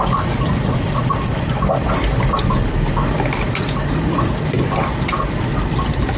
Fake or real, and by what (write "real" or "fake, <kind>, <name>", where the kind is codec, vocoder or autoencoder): fake, vocoder, BigVGAN v2